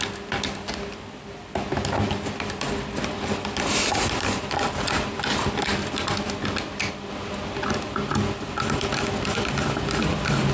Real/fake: real